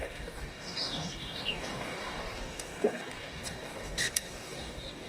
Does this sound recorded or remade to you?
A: remade